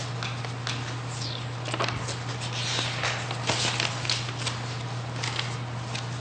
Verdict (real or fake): real